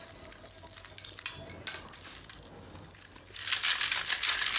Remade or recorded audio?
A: recorded